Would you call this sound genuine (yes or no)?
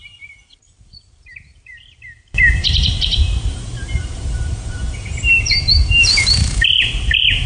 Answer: no